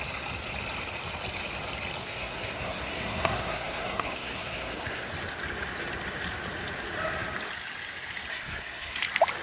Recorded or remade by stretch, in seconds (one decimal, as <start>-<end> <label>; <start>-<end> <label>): 0.0-2.0 recorded; 2.0-5.1 remade; 5.1-8.3 recorded; 8.3-9.0 remade; 9.0-9.4 recorded